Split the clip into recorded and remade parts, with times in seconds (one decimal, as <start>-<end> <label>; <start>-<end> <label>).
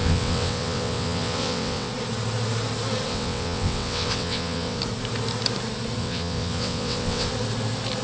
0.0-1.9 remade; 1.9-3.1 recorded; 3.1-4.8 remade; 4.8-6.0 recorded; 6.0-7.3 remade; 7.3-8.0 recorded